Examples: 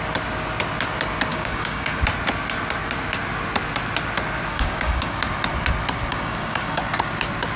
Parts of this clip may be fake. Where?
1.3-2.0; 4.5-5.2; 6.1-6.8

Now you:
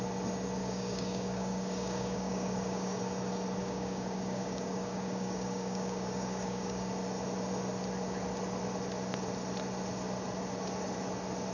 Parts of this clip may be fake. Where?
0.6-3.0; 3.6-6.9

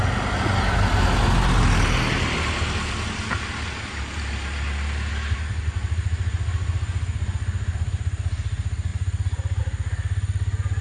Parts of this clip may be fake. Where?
none

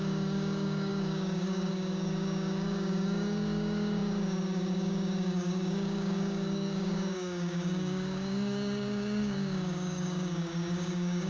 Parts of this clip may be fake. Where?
0.0-11.3

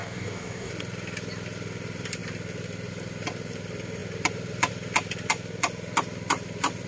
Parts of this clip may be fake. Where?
0.0-0.7

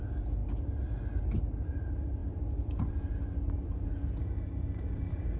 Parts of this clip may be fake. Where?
4.2-5.4

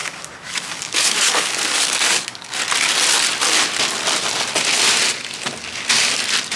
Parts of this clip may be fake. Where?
0.0-2.6